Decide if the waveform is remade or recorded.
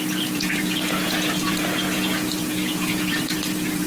remade